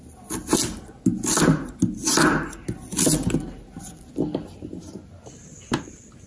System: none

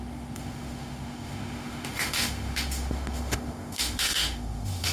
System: autoencoder, DAC-VAE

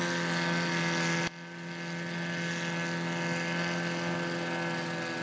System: none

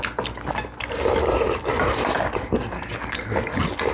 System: none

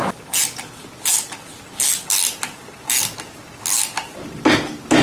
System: none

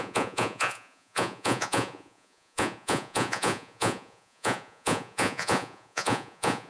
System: vocoder, Vocos